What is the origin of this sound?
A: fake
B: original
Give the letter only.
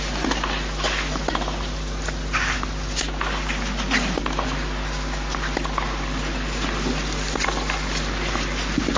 B